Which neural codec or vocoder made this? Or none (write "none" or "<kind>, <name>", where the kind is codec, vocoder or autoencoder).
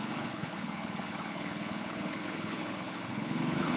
codec, HILCodec